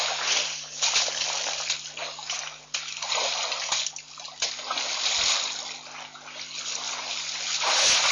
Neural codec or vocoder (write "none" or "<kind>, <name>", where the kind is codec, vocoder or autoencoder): none